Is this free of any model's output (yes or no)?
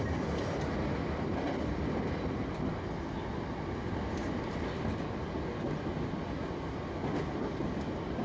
yes